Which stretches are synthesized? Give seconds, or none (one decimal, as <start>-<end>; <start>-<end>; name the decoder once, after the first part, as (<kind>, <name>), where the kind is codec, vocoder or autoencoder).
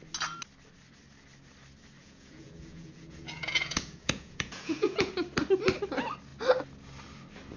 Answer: 2.0-5.1 (vocoder, Vocos)